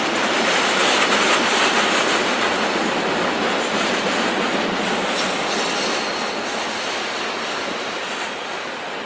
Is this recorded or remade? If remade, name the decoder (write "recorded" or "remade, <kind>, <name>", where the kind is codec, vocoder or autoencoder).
recorded